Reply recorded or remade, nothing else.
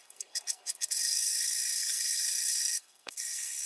remade